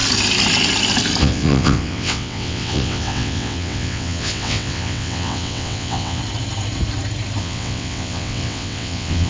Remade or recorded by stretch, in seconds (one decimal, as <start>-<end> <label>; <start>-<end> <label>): 0.0-1.2 recorded; 1.2-6.2 remade; 6.2-7.4 recorded; 7.4-9.3 remade